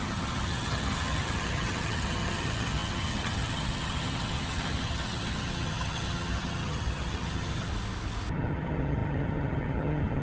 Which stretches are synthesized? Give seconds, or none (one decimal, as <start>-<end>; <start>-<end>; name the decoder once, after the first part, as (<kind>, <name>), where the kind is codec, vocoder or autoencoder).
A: 0.0-7.7 (vocoder, HiFi-GAN); 8.3-10.2